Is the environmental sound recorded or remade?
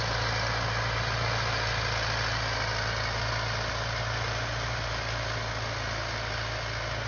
recorded